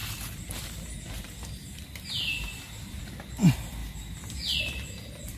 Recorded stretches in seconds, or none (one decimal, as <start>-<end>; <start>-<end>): 3.0-5.4